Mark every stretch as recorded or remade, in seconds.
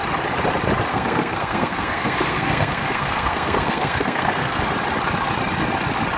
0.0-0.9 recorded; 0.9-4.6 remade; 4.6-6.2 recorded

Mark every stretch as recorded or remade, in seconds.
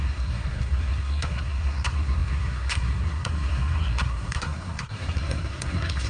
0.0-6.1 remade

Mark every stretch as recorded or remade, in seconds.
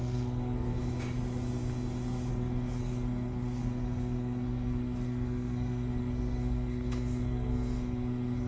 0.0-0.7 remade; 0.7-2.3 recorded; 2.3-8.5 remade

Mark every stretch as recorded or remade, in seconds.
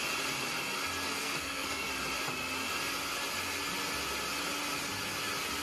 0.0-1.2 recorded; 1.2-1.9 remade; 1.9-5.6 recorded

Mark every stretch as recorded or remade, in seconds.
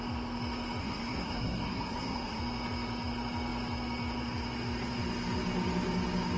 0.0-0.8 recorded; 0.8-2.4 remade; 2.4-6.4 recorded